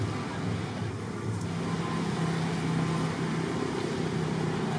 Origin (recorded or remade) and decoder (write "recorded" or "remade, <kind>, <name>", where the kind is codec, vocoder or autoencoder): recorded